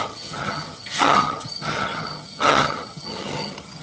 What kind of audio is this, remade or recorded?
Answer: remade